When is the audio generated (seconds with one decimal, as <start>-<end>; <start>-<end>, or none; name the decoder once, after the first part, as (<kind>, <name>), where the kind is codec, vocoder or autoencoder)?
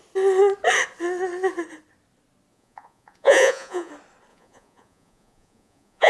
2.5-3.9 (vocoder, Vocos); 4.3-6.1